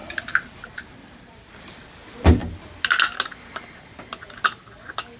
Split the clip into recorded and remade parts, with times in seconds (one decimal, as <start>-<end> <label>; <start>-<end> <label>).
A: 0.0-2.4 remade; 2.4-5.2 recorded